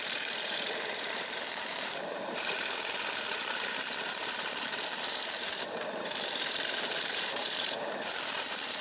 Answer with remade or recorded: remade